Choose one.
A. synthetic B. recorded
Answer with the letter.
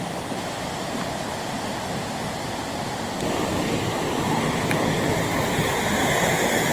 B